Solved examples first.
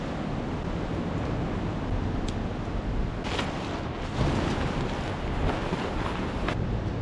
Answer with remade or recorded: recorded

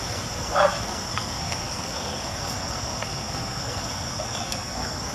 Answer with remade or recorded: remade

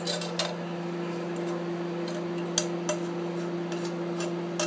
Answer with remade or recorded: recorded